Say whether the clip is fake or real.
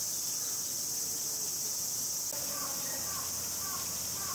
real